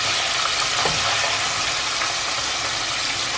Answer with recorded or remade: recorded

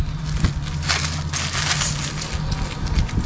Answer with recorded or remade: recorded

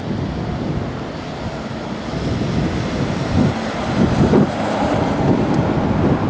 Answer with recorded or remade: recorded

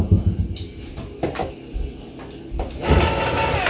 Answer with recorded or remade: recorded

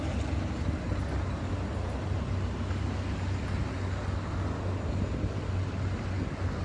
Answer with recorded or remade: recorded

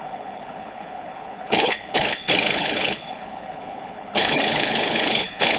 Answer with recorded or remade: remade